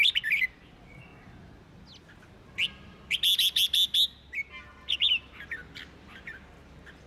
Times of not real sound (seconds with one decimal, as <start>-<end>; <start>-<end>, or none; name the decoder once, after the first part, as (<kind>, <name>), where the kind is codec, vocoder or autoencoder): none

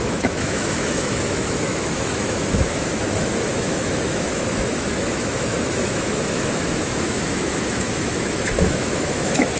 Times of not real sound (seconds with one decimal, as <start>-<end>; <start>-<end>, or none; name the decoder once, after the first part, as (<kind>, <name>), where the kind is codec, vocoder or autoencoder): 0.0-9.6 (autoencoder, DAC-VAE)